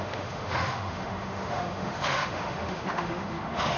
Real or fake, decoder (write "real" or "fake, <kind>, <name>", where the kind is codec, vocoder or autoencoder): fake, autoencoder, DAC-VAE